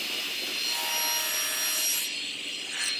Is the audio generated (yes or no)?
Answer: no